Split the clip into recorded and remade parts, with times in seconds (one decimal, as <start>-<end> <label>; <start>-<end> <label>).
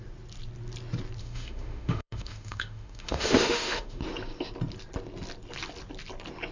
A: 0.0-1.2 recorded; 1.2-4.0 remade; 4.0-6.5 recorded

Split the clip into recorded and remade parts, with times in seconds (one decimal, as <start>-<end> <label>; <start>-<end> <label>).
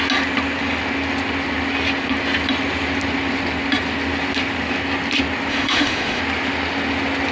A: 0.0-5.5 recorded; 5.5-6.2 remade; 6.2-7.3 recorded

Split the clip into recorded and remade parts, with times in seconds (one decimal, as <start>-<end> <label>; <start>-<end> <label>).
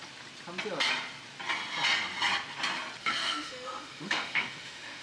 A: 0.0-3.0 recorded; 3.0-5.0 remade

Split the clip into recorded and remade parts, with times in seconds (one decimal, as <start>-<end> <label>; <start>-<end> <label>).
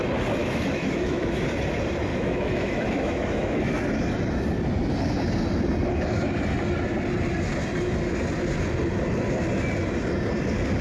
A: 0.0-0.4 recorded; 0.4-1.4 remade; 1.4-2.1 recorded; 2.1-3.7 remade; 3.7-10.8 recorded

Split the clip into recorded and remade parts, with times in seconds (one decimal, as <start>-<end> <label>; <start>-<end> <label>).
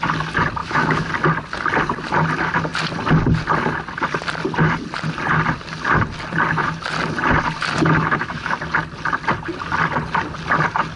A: 0.0-0.6 recorded; 0.6-1.1 remade; 1.1-8.0 recorded; 8.0-8.5 remade; 8.5-11.0 recorded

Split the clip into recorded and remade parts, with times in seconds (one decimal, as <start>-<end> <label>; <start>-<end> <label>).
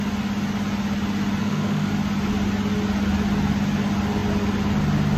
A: 0.0-1.4 recorded; 1.4-1.9 remade; 1.9-5.2 recorded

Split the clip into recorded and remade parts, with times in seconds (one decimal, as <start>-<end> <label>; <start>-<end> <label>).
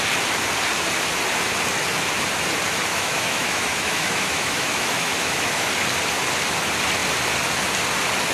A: 0.0-2.9 recorded; 2.9-5.7 remade; 5.7-8.3 recorded